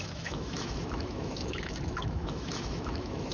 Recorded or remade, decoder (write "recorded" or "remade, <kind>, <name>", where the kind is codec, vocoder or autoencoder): remade, autoencoder, DAC-VAE